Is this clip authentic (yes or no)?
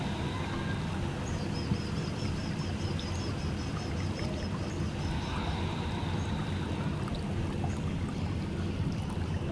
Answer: yes